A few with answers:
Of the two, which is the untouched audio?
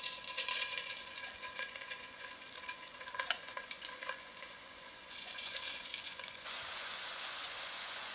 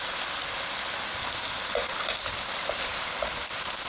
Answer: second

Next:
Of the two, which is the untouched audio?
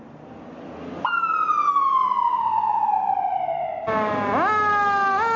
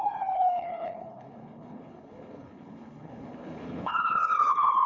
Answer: first